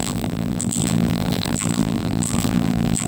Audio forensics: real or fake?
fake